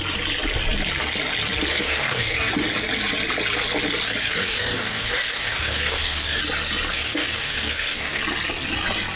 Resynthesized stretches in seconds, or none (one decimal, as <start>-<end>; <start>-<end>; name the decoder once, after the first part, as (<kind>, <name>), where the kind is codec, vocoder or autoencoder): 1.7-2.5 (codec, DAC); 4.2-6.4; 6.9-8.2